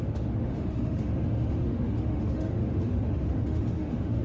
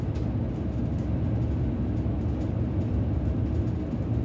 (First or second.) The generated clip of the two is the first